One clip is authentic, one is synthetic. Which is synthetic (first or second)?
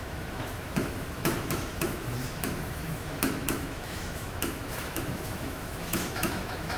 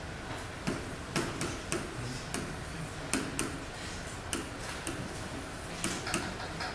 first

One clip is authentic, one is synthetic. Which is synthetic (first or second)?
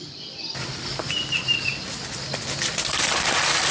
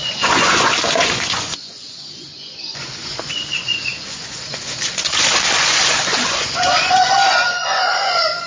second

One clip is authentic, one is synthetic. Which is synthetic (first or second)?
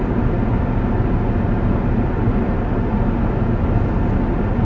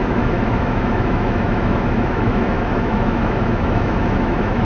second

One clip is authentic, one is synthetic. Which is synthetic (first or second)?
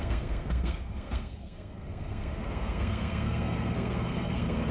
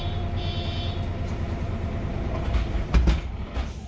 first